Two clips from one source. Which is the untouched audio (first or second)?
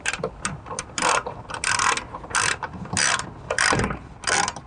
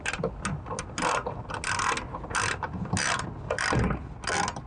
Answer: second